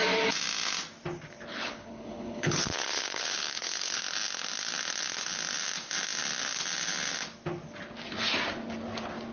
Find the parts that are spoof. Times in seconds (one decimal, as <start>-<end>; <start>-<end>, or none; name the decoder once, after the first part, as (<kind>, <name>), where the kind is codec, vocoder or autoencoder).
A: 1.5-4.0 (codec, HILCodec)